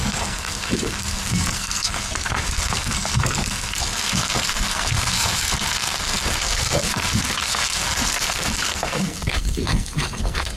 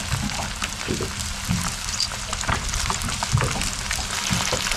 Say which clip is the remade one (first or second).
first